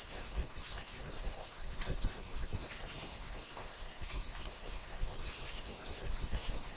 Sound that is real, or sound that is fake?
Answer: fake